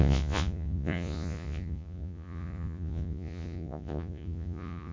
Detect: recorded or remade remade